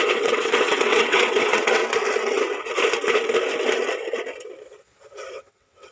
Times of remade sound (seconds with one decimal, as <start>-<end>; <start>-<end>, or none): 0.0-1.8; 5.3-5.9